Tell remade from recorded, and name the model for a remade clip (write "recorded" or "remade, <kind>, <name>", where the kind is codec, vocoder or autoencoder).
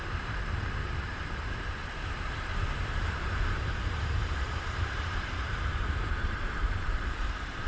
remade, vocoder, BigVGAN v2